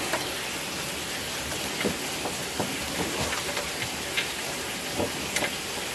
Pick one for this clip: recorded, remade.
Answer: recorded